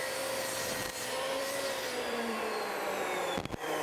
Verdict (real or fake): fake